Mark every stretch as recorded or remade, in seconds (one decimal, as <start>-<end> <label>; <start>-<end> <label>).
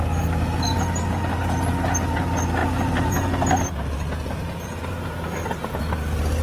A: 0.0-6.4 recorded